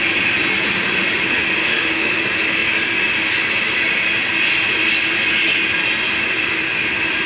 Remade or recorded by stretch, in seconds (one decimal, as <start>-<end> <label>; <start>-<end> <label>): 0.0-1.6 recorded; 1.6-2.2 remade; 2.2-7.3 recorded